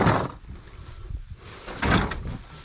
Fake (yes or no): no